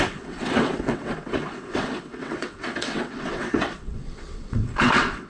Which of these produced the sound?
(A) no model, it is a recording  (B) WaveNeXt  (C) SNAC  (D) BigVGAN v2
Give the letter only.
B